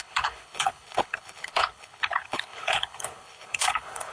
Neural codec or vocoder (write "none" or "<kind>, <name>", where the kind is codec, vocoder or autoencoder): codec, HILCodec